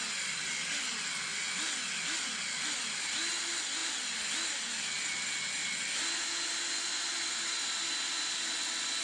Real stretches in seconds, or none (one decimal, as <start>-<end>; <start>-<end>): 0.0-9.0

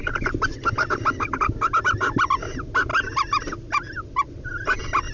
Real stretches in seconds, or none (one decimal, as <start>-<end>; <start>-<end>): 0.0-5.1

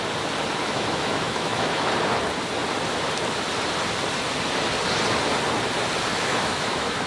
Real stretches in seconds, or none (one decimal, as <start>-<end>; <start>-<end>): 0.0-0.6; 1.9-6.1

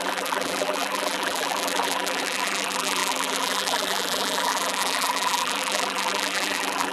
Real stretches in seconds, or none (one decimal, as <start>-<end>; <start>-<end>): none

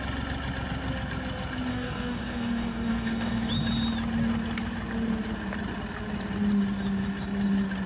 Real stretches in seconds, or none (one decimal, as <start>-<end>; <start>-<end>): 0.0-1.7; 3.5-7.9